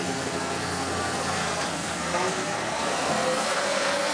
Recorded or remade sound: remade